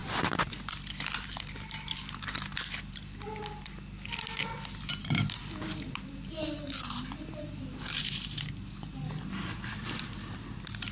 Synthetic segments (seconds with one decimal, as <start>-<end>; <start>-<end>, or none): 0.0-3.4; 5.0-9.1